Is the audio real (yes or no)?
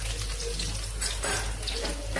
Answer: yes